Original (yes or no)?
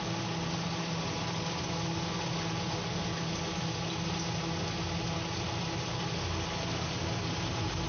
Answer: yes